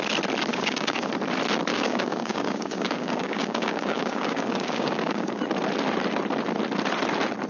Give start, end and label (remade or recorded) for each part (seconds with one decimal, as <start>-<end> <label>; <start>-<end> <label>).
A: 0.0-0.5 recorded; 0.5-1.1 remade; 1.1-1.7 recorded; 1.7-5.4 remade; 5.4-7.5 recorded